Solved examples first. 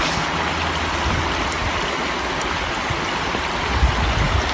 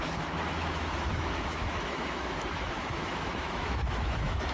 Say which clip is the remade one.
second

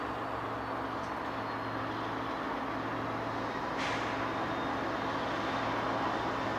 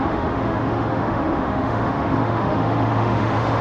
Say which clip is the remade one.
second